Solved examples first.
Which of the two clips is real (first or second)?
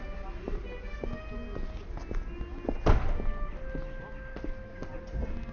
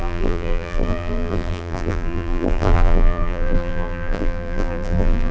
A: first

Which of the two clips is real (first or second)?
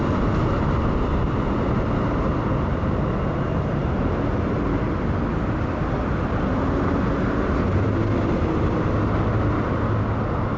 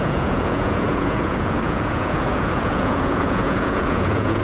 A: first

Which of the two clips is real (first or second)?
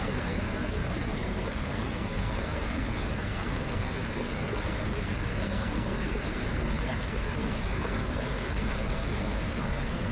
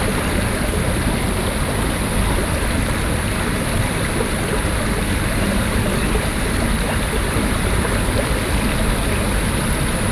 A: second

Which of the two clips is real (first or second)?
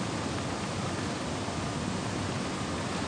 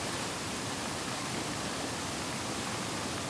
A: second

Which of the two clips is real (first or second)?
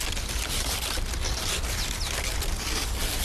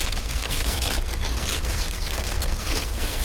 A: first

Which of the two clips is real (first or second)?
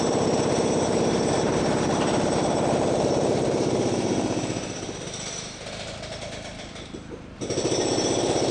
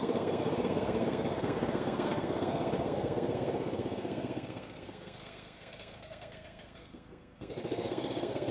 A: first